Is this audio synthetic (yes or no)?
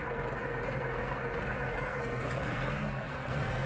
yes